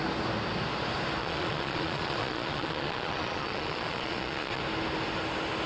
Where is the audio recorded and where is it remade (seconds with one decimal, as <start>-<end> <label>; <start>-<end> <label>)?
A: 0.0-1.2 recorded; 1.2-4.6 remade; 4.6-5.7 recorded